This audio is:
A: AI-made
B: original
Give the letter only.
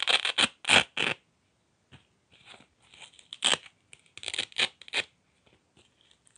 B